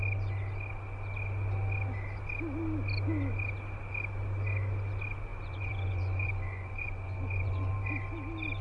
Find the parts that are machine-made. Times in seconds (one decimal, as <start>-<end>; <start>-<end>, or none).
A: 5.3-7.7